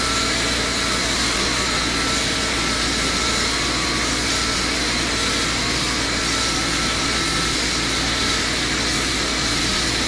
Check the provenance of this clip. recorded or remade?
recorded